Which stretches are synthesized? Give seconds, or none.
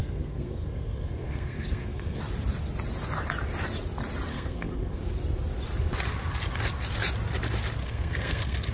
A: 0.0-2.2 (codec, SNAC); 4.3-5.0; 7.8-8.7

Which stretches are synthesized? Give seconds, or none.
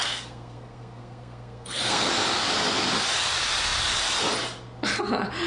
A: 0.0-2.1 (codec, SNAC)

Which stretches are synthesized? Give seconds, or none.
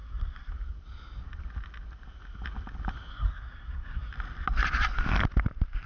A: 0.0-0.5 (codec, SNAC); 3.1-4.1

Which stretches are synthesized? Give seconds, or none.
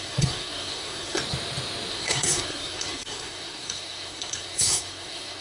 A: 0.0-1.2 (codec, SNAC); 1.9-5.4